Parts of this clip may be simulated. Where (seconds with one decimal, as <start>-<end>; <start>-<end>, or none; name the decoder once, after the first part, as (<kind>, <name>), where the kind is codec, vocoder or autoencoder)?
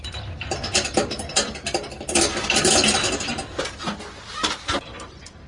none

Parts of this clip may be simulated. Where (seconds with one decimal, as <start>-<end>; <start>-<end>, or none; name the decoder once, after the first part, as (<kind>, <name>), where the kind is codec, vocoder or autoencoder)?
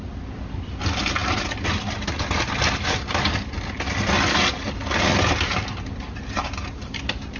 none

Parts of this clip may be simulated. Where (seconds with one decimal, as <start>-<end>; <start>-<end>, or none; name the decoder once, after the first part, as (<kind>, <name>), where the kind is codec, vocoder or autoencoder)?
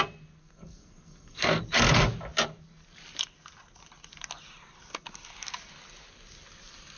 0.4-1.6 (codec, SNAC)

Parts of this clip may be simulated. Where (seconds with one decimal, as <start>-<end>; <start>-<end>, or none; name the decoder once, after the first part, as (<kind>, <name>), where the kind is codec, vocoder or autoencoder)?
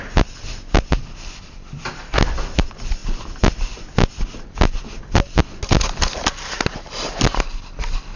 none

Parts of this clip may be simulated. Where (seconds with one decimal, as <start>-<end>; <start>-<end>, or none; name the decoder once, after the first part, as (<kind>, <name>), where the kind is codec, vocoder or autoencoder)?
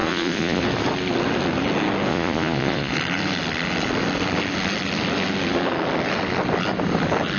0.0-0.6 (vocoder, Vocos); 2.1-2.9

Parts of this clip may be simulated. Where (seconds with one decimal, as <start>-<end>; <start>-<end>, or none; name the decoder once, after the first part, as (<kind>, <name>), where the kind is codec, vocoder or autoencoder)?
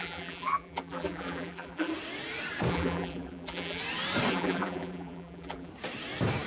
0.0-1.9 (vocoder, BigVGAN v2); 2.7-3.8; 4.3-5.7